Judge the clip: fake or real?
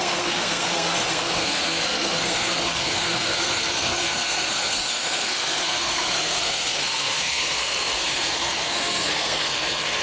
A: fake